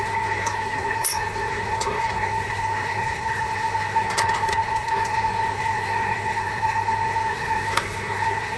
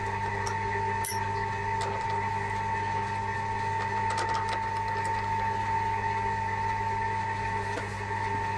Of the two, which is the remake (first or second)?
first